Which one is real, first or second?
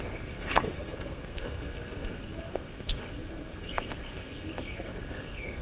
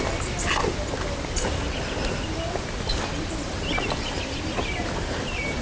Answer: second